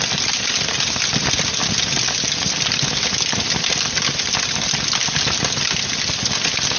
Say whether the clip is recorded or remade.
recorded